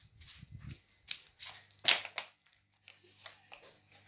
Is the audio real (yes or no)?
yes